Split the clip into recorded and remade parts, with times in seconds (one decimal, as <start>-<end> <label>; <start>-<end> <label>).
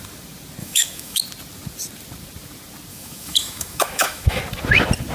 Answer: 0.0-0.6 recorded; 0.6-1.2 remade; 1.2-2.9 recorded; 2.9-4.4 remade; 4.4-5.1 recorded